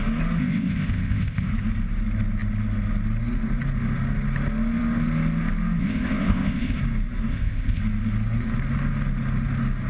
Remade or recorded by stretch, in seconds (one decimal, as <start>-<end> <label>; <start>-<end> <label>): 0.0-0.4 recorded; 0.4-1.5 remade; 1.5-5.8 recorded; 5.8-6.8 remade; 6.8-7.3 recorded; 7.3-7.8 remade; 7.8-9.9 recorded